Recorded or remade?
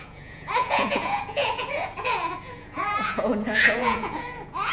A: remade